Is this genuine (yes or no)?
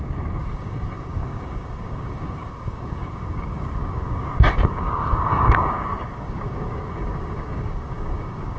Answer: no